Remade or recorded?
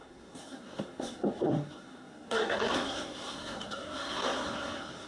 remade